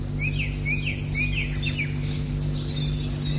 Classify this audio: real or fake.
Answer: real